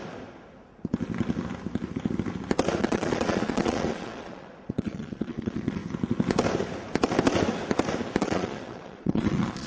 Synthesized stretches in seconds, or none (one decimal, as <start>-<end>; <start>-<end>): 2.8-5.8; 8.2-9.7